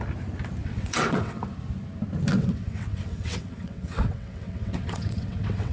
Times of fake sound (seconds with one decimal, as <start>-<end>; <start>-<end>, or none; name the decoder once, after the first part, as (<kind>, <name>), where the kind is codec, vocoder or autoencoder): 0.6-1.4 (vocoder, WaveNeXt); 2.3-5.7